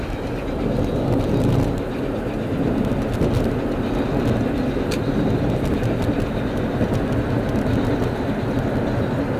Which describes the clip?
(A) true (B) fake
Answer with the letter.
A